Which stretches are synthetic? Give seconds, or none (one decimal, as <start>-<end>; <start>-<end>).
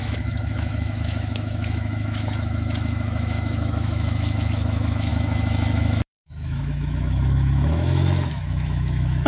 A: 0.0-9.3